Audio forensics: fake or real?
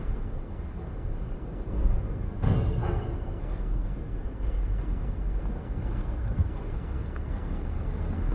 fake